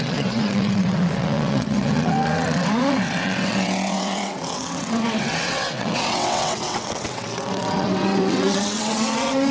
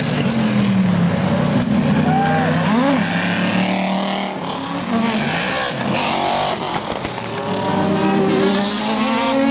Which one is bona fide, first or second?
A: second